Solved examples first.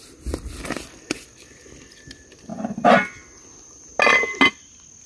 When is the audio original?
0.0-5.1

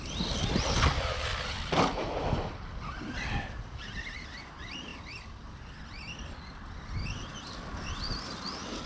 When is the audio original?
0.0-1.3; 4.4-4.9; 5.4-8.9